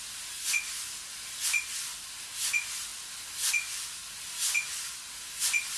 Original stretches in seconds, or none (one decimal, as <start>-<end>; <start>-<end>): 0.0-5.8